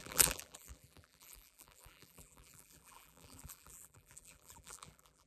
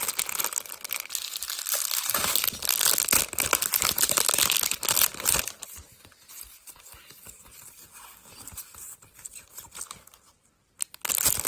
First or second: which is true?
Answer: second